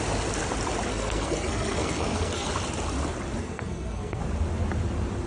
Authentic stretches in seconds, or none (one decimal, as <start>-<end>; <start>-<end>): 0.0-0.9; 2.5-3.4; 4.2-5.3